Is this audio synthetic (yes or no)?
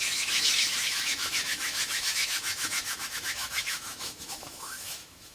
yes